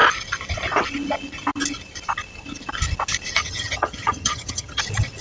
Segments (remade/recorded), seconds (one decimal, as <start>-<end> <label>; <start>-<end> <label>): 0.0-3.4 recorded; 3.4-4.8 remade; 4.8-5.2 recorded